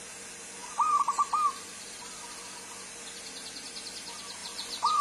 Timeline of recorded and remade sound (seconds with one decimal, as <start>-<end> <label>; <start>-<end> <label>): 0.0-0.6 recorded; 0.6-2.0 remade; 2.0-4.4 recorded; 4.4-5.0 remade